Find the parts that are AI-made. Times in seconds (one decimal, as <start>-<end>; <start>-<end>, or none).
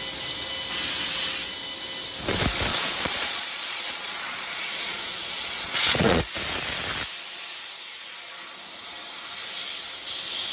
2.7-6.2